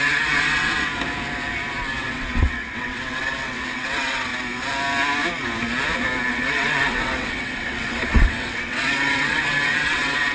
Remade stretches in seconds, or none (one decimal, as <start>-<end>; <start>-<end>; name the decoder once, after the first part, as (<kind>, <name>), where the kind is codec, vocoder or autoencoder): 0.0-0.9 (vocoder, WaveNeXt); 2.0-4.3; 6.3-10.3